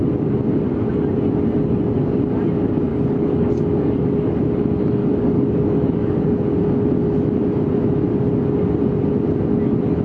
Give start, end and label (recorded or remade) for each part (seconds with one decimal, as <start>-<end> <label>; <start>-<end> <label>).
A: 0.0-2.9 recorded; 2.9-4.4 remade; 4.4-5.0 recorded; 5.0-6.3 remade; 6.3-10.0 recorded